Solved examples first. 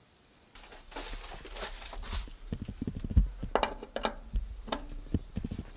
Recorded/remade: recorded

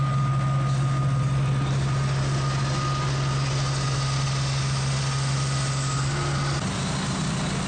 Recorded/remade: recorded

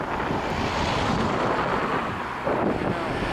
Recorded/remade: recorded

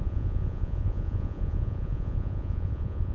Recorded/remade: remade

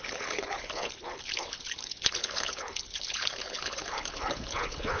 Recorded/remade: remade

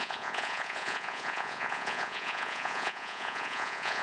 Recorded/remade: remade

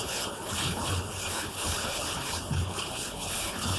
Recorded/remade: remade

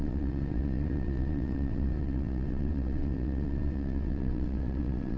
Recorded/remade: remade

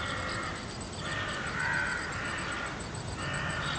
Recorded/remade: recorded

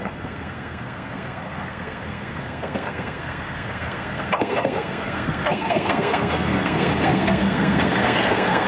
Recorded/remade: remade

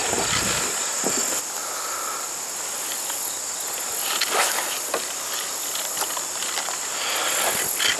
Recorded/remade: recorded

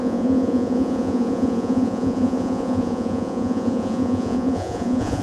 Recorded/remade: remade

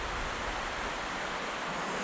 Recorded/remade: recorded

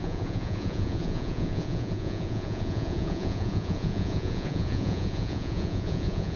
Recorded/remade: remade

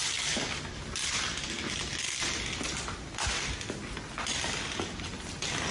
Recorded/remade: remade